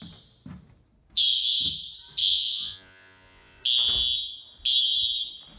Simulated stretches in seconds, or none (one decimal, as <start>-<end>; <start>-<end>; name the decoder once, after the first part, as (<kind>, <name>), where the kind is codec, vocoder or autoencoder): 2.2-3.6 (vocoder, Vocos)